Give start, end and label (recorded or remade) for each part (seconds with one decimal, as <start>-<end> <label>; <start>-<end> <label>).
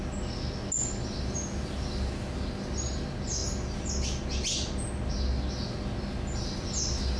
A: 0.0-3.4 recorded; 3.4-3.9 remade; 3.9-7.2 recorded